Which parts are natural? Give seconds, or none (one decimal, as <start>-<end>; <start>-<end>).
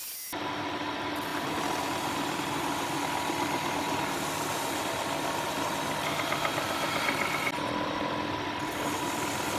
0.0-9.6